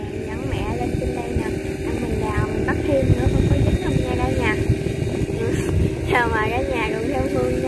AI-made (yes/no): no